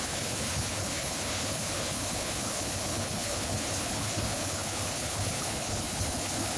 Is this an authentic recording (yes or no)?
no